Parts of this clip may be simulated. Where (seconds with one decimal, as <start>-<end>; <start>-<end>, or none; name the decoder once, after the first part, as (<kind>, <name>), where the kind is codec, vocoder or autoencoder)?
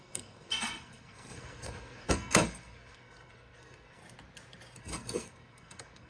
0.0-4.0 (codec, SNAC); 4.8-6.1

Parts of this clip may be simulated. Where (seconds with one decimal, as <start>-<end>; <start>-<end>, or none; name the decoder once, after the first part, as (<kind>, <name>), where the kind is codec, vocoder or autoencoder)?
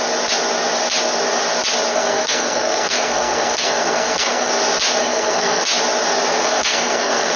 1.9-4.5 (codec, SNAC); 5.0-5.6; 6.3-7.4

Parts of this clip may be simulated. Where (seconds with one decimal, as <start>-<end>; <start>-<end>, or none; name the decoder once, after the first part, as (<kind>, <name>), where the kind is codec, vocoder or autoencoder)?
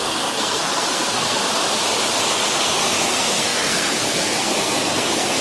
0.0-1.4 (codec, SNAC); 2.2-5.4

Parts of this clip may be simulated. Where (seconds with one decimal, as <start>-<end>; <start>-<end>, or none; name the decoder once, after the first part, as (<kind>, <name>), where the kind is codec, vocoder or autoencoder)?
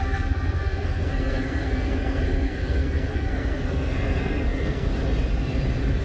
0.0-4.9 (codec, SNAC)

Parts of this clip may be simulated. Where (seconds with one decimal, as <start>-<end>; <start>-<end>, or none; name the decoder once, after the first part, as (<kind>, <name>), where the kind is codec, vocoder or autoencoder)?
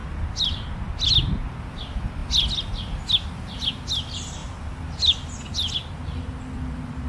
none